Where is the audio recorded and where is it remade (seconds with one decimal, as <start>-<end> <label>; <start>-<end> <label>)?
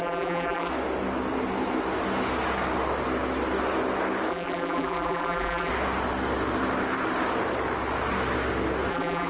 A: 0.0-0.7 remade; 0.7-4.3 recorded; 4.3-5.7 remade; 5.7-8.9 recorded; 8.9-9.3 remade